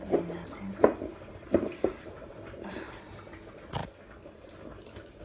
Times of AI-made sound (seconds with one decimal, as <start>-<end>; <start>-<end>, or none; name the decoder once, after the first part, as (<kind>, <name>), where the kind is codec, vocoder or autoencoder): 1.1-3.4 (vocoder, BigVGAN v2); 3.8-5.2